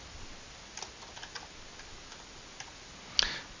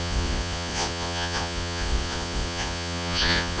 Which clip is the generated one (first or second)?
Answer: second